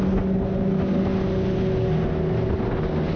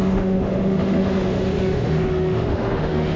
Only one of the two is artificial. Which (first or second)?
second